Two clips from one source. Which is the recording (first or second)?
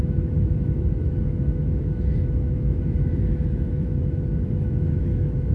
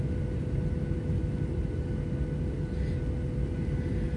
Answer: second